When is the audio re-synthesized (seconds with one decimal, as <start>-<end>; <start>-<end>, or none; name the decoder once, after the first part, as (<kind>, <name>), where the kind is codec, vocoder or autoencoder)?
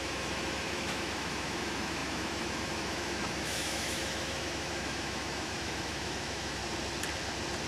0.0-6.6 (autoencoder, DAC-VAE)